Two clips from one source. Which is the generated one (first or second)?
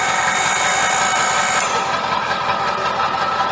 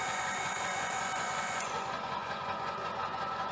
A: second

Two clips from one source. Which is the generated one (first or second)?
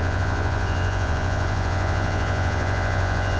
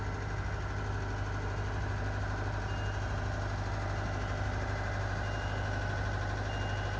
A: first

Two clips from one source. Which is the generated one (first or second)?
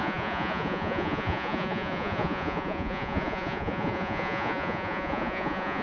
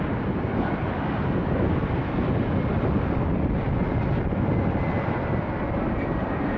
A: first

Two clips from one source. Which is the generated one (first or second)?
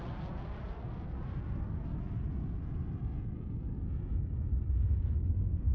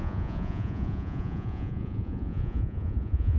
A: second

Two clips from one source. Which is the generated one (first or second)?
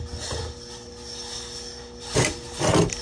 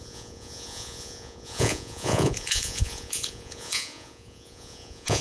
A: second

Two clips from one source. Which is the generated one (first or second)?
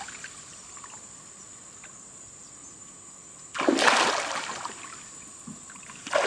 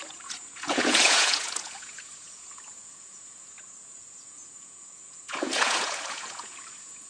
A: second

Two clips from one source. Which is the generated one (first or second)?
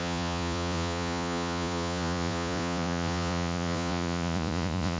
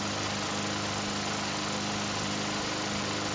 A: first